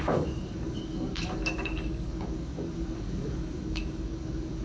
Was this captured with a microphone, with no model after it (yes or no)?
no